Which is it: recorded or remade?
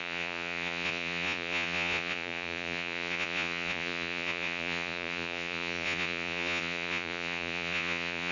remade